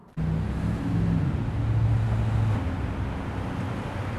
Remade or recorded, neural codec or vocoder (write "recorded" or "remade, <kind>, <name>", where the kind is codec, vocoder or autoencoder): recorded